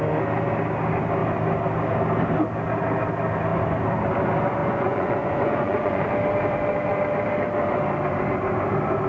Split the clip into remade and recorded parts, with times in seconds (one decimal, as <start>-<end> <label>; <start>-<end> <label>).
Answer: 0.0-4.6 recorded; 4.6-6.1 remade; 6.1-9.1 recorded